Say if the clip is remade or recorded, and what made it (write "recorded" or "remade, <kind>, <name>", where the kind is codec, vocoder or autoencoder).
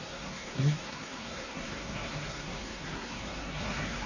remade, codec, SNAC